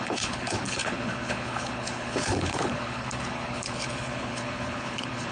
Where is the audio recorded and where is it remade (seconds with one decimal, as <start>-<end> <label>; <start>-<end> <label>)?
0.0-5.3 remade